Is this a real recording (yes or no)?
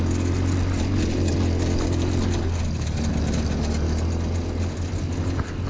yes